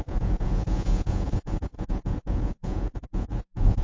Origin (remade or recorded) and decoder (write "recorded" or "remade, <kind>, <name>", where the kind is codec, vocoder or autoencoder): remade, vocoder, Vocos